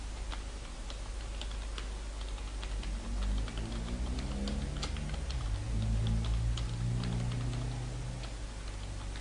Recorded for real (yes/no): yes